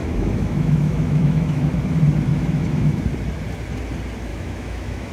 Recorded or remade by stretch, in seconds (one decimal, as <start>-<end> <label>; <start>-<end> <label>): 0.0-1.8 remade; 1.8-2.3 recorded; 2.3-3.0 remade; 3.0-4.3 recorded; 4.3-5.1 remade